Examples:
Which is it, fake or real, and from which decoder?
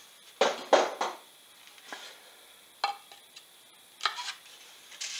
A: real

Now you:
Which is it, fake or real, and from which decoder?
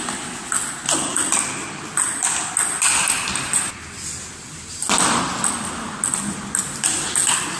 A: real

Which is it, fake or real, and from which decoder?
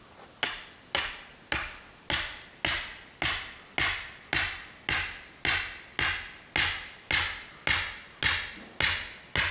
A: real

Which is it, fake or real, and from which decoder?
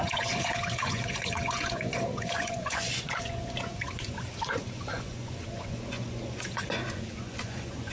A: fake, vocoder, Vocos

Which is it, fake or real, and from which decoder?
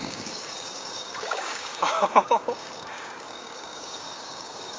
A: fake, codec, DAC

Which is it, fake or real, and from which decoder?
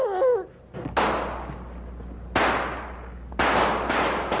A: real